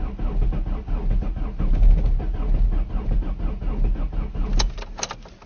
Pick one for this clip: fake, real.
real